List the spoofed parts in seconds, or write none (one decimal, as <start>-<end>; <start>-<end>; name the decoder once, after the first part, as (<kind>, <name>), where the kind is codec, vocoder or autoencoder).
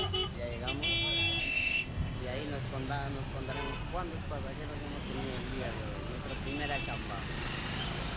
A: 1.4-2.2 (codec, ZipCodec)